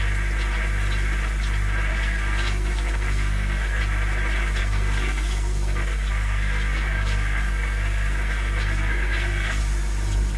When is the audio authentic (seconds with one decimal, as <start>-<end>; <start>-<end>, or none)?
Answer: 0.0-1.9; 3.8-4.6; 9.6-10.4